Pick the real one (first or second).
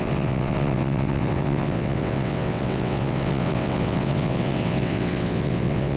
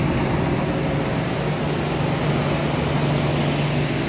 second